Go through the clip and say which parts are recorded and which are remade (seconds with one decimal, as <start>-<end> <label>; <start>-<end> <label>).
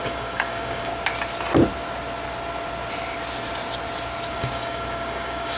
0.0-0.9 remade; 0.9-4.3 recorded; 4.3-5.6 remade